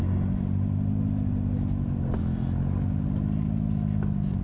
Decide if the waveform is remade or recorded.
recorded